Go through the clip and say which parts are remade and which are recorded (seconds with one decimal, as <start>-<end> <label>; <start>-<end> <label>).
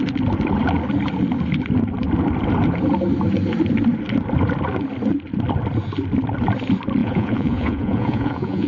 0.0-7.0 recorded; 7.0-8.7 remade